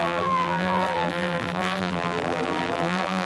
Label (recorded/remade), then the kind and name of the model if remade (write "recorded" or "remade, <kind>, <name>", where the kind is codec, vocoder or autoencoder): remade, vocoder, BigVGAN v2